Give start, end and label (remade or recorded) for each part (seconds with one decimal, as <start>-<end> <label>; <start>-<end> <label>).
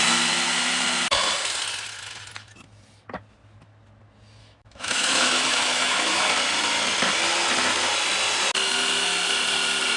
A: 0.0-4.4 recorded; 4.4-6.3 remade; 6.3-10.0 recorded